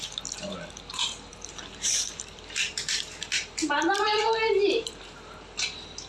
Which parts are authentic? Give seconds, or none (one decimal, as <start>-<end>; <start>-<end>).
0.0-1.3; 5.0-6.1